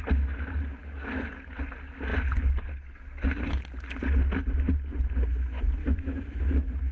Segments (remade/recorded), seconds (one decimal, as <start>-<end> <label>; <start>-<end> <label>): 0.0-0.8 recorded; 0.8-1.3 remade; 1.3-5.8 recorded; 5.8-6.9 remade